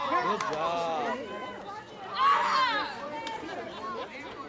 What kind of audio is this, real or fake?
real